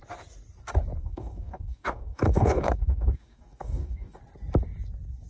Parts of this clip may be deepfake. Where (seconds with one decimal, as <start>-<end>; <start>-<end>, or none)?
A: 1.0-4.2